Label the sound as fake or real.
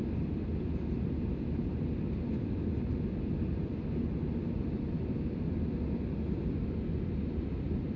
real